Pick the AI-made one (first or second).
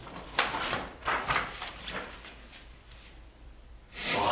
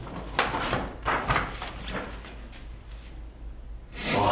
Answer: first